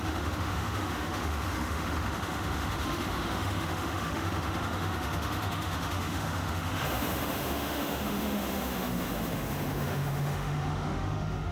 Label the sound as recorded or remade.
remade